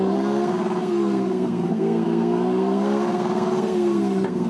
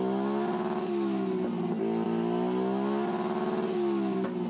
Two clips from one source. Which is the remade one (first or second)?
first